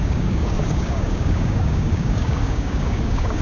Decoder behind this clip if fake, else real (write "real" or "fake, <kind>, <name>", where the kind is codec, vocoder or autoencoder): fake, codec, DAC